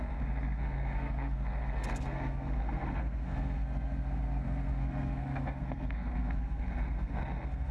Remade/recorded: remade